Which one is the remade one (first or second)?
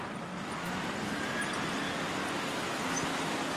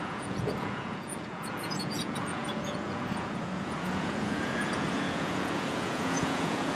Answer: second